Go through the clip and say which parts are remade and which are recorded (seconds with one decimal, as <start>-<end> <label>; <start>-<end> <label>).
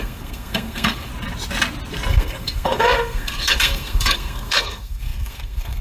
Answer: 0.0-1.1 remade; 1.1-2.1 recorded; 2.1-5.8 remade